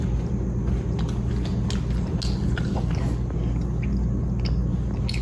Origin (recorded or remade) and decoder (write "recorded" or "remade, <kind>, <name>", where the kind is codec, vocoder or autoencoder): recorded